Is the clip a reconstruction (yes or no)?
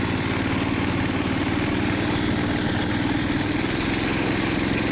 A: no